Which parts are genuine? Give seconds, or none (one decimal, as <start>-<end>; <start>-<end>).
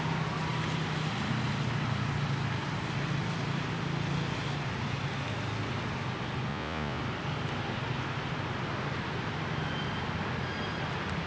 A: 0.0-6.5; 7.0-11.3